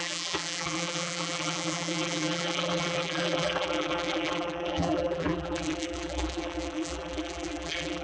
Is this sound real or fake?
fake